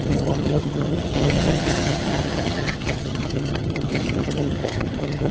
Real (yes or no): no